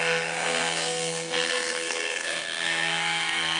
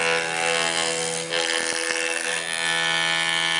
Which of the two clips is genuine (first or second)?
second